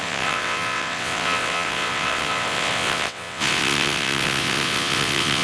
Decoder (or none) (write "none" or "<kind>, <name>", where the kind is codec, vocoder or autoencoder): vocoder, WaveNeXt